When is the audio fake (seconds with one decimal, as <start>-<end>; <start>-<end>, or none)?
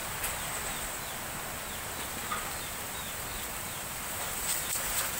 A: 0.0-5.2